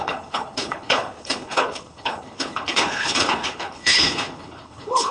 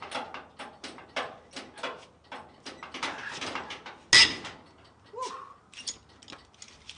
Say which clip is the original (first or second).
second